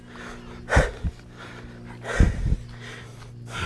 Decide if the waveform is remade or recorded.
recorded